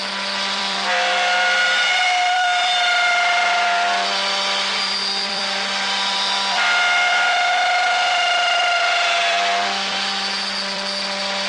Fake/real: fake